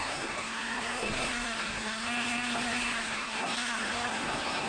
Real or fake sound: fake